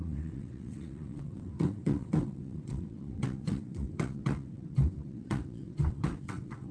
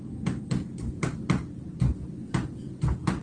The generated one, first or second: first